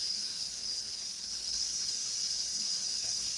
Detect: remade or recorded remade